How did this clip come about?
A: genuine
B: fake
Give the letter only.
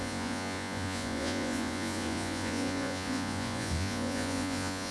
B